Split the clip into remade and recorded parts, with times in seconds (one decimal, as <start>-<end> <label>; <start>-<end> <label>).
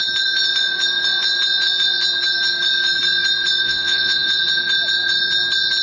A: 0.0-3.6 recorded; 3.6-4.4 remade; 4.4-5.8 recorded